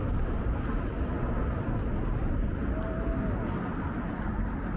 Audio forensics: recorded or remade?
recorded